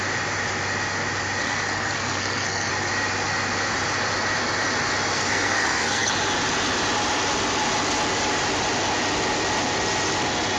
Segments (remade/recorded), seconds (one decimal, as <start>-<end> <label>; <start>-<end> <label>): 0.0-1.4 recorded; 1.4-2.7 remade; 2.7-5.1 recorded; 5.1-6.1 remade; 6.1-10.6 recorded